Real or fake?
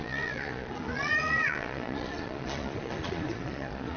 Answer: fake